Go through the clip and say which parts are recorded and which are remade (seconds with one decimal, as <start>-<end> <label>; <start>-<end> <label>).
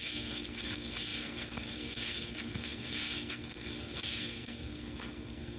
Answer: 0.0-5.6 remade